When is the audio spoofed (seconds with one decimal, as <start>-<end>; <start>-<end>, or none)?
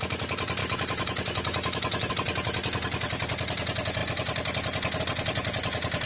0.6-2.1